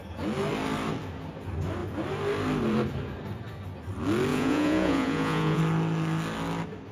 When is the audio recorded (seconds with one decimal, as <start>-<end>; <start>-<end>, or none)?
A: 0.0-4.3; 5.6-6.9